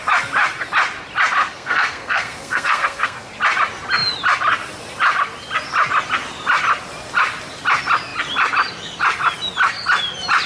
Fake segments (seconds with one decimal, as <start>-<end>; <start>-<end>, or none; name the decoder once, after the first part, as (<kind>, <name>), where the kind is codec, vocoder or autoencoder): 1.4-3.3 (codec, SNAC)